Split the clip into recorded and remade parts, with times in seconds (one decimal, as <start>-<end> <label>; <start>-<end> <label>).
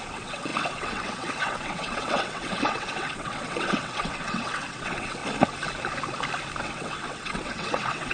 0.0-5.2 remade; 5.2-6.6 recorded; 6.6-8.1 remade